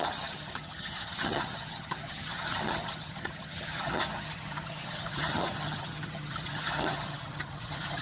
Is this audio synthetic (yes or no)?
yes